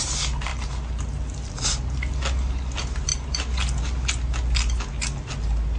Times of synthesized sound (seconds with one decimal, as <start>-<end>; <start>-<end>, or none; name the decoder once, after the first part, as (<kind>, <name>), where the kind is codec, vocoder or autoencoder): none